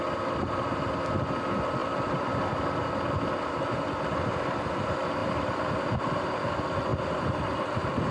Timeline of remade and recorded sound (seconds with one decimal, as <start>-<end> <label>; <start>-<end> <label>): 0.0-1.8 recorded; 1.8-3.1 remade; 3.1-5.2 recorded; 5.2-6.0 remade; 6.0-8.1 recorded